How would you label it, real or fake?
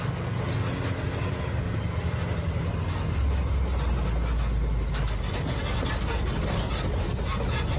real